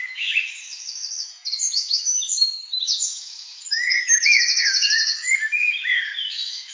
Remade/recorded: remade